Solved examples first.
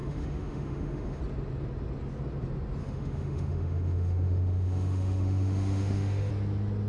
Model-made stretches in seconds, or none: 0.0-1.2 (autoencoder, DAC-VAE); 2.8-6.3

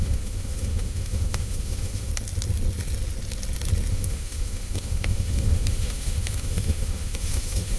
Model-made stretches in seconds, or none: 0.0-2.1 (autoencoder, DAC-VAE); 3.9-7.8